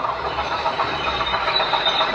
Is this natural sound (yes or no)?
no